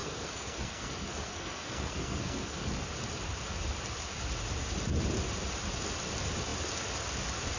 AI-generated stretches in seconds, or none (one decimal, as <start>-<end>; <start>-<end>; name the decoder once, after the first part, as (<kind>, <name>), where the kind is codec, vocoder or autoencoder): 0.0-2.8 (codec, SNAC)